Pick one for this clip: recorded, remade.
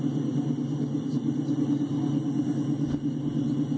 recorded